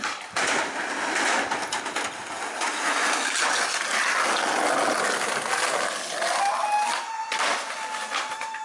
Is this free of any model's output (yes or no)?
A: yes